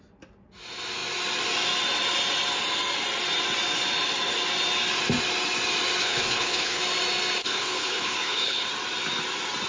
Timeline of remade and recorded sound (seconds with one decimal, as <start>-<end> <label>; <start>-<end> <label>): 0.0-6.0 recorded; 6.0-6.8 remade; 6.8-7.4 recorded; 7.4-8.7 remade; 8.7-9.7 recorded

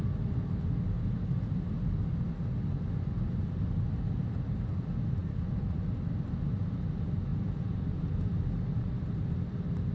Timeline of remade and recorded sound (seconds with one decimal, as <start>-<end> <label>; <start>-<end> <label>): 0.0-5.2 recorded; 5.2-5.7 remade; 5.7-7.3 recorded; 7.3-9.2 remade; 9.2-9.9 recorded

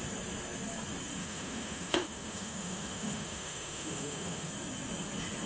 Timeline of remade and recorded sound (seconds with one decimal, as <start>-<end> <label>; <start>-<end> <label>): 0.0-1.2 recorded; 1.2-4.5 remade; 4.5-5.5 recorded

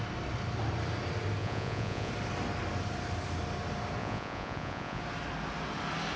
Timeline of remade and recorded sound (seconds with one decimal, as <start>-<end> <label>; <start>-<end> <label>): 0.0-1.4 recorded; 1.4-2.1 remade; 2.1-4.0 recorded; 4.0-5.0 remade; 5.0-6.2 recorded

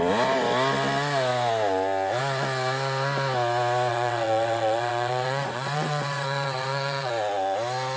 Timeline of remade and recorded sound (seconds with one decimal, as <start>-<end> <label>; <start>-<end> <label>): 0.0-3.9 recorded; 3.9-7.1 remade; 7.1-8.0 recorded

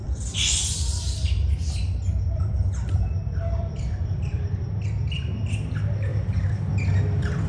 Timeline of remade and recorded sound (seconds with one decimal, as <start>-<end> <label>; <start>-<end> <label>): 0.0-4.5 remade; 4.5-6.1 recorded; 6.1-6.6 remade; 6.6-7.5 recorded